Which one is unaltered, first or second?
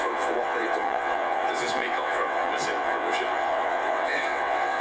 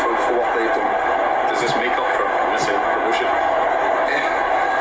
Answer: second